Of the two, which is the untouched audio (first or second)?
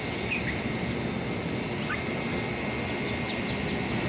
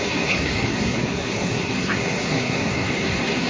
first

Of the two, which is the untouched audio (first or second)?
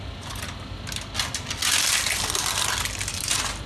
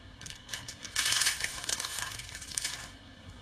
first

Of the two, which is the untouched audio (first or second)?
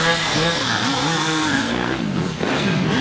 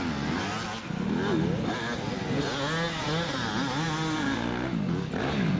second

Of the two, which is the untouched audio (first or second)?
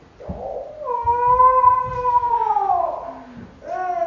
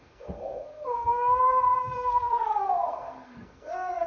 first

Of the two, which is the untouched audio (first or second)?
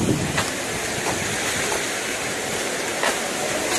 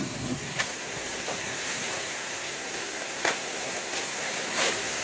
first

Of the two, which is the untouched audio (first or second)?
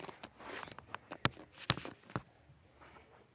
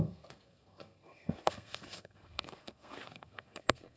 first